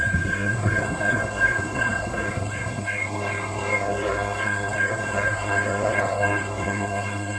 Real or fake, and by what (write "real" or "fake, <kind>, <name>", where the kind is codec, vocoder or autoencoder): fake, codec, SNAC